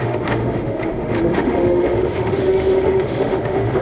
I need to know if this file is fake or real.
fake